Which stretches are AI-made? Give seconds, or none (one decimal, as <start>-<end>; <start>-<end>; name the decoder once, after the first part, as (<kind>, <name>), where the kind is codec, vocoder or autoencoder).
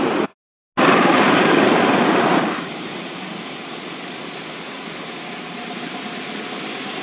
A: 1.1-3.4 (vocoder, BigVGAN v2); 5.3-6.0